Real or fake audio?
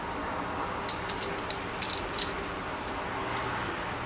real